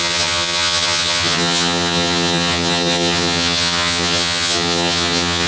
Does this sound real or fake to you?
fake